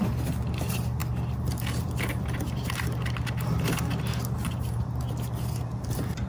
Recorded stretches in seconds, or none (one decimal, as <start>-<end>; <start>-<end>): 0.0-4.4; 5.0-6.3